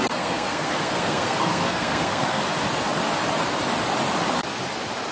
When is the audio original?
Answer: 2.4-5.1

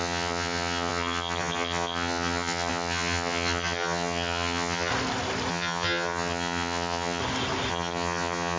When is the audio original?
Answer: 4.9-5.5; 7.2-7.7

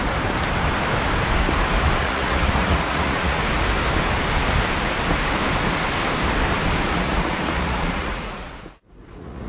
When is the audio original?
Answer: 0.0-2.0; 3.4-6.9

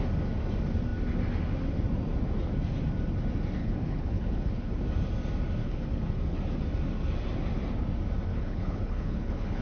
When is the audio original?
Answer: 0.0-3.6; 4.8-5.6; 6.2-8.3

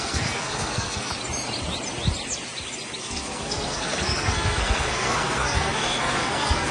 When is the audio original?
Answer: 1.1-3.0